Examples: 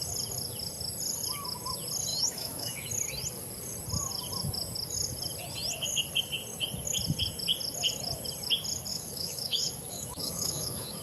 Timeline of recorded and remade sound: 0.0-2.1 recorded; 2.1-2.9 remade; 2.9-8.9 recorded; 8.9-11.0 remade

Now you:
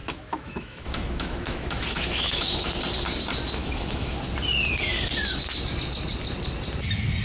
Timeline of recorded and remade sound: 0.0-2.7 remade; 2.7-3.6 recorded; 3.6-4.1 remade; 4.1-7.2 recorded

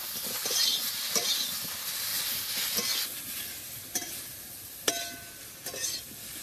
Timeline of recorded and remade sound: 0.0-6.4 recorded

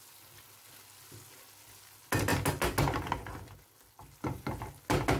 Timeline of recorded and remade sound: 0.0-5.2 recorded

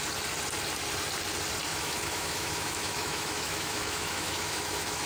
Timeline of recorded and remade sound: 0.0-1.7 recorded; 1.7-5.1 remade